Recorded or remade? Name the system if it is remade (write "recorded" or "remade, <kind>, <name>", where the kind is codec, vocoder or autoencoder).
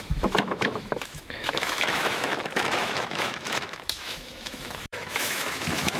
remade, autoencoder, DAC-VAE